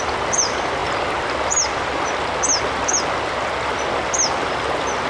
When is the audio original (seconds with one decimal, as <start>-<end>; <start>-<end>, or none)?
0.0-5.1